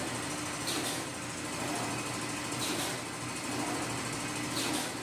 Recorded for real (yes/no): yes